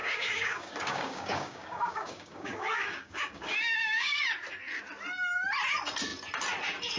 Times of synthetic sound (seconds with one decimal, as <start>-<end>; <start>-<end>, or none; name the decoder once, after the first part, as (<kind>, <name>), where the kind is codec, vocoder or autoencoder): 0.0-4.2 (codec, DAC)